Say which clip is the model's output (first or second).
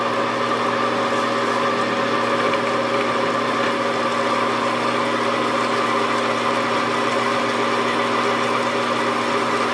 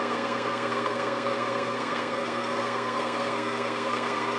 second